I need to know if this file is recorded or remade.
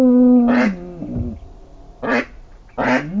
recorded